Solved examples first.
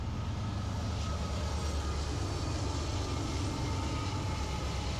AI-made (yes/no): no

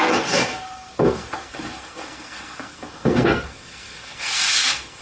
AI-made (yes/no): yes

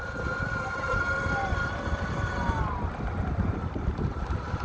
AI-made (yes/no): no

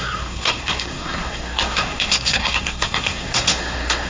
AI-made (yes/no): yes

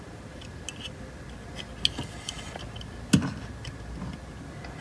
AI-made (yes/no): no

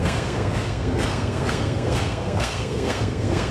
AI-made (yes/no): yes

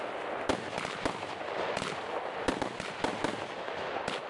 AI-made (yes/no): no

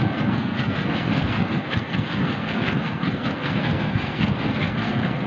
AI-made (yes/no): yes